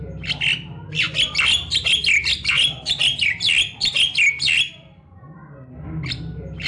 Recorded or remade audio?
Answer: recorded